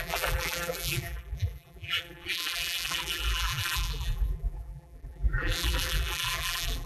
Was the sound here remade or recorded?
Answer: remade